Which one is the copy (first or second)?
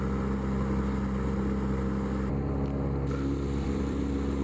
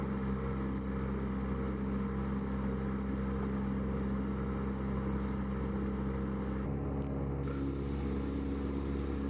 first